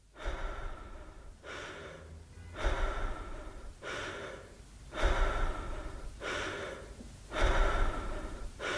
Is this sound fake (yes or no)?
no